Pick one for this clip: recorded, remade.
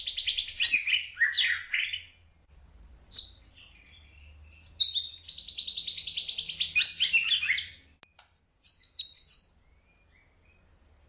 recorded